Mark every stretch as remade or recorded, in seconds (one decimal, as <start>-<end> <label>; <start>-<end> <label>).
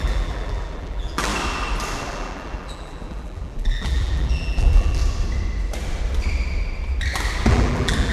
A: 0.0-1.3 remade; 1.3-2.1 recorded; 2.1-5.0 remade; 5.0-7.5 recorded; 7.5-8.1 remade